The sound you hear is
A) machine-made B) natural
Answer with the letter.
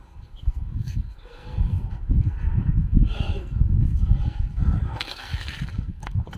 A